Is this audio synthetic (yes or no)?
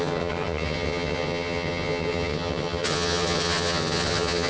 yes